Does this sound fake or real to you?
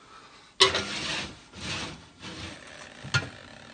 real